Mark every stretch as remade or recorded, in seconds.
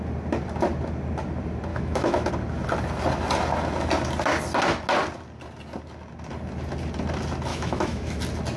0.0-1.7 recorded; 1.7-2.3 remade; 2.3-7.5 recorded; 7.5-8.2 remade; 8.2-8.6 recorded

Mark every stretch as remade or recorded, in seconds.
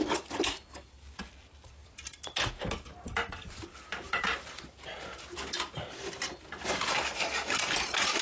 0.0-8.2 recorded